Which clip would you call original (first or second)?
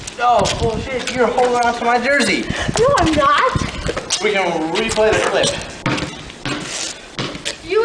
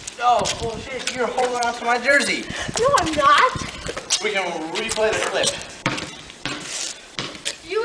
first